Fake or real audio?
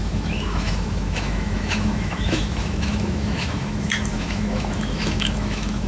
fake